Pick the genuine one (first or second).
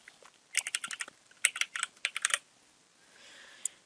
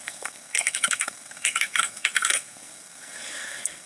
first